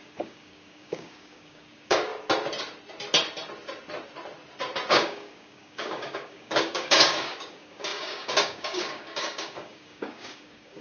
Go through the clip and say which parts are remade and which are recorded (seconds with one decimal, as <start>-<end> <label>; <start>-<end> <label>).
0.0-2.1 remade; 2.1-4.9 recorded; 4.9-10.8 remade